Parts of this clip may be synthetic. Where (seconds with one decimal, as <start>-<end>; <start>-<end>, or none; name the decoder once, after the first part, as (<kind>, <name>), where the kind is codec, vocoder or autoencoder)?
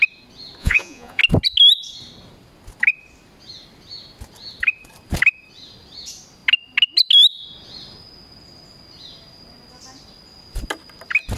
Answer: 0.6-1.2 (vocoder, Vocos)